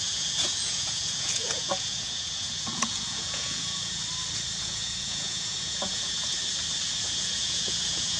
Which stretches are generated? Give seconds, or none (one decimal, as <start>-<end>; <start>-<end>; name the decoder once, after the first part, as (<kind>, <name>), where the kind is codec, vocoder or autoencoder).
0.0-4.0 (vocoder, Vocos); 4.6-6.4; 7.0-8.2